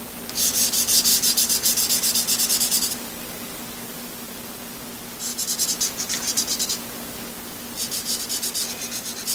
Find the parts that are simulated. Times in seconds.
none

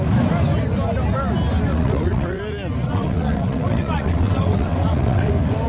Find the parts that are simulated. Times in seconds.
1.7-2.4 (vocoder, WaveNeXt); 2.9-5.3

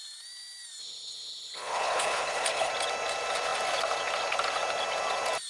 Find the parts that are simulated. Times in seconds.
0.8-2.7 (codec, HILCodec)

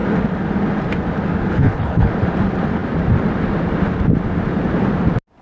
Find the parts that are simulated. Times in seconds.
1.5-2.1 (codec, HILCodec)

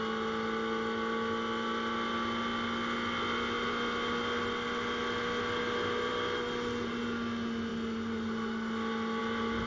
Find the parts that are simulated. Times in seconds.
none

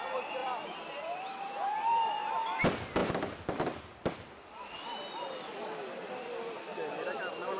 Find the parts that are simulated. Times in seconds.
0.4-2.6 (vocoder, BigVGAN v2)

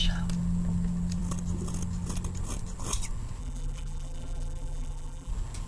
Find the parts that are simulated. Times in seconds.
3.4-5.3 (vocoder, BigVGAN v2)